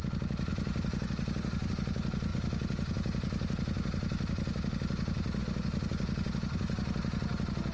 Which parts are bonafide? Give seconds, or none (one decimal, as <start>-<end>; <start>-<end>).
0.0-7.7